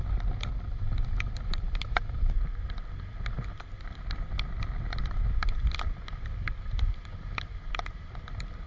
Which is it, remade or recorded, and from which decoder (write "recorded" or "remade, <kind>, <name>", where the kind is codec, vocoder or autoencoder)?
recorded